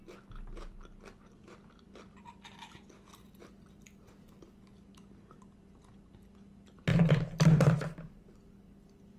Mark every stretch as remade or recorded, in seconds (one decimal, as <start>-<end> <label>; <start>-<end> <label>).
0.0-6.9 recorded; 6.9-8.7 remade; 8.7-9.2 recorded